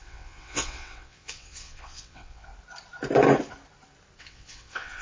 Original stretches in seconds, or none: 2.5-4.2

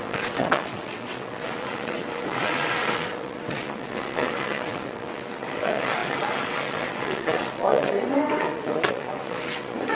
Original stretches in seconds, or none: none

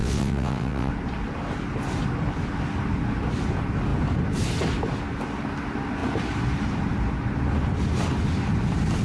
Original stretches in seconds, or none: 0.9-9.0

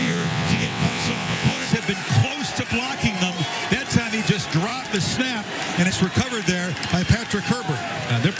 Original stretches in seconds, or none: 1.7-8.4

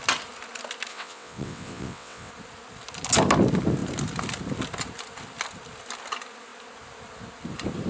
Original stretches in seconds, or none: 0.0-0.9; 2.3-7.9

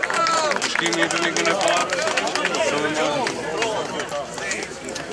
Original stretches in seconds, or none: 0.0-5.1